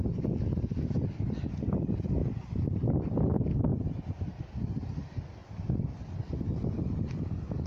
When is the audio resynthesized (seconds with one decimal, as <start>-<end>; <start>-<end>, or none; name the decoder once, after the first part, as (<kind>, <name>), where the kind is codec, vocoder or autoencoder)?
none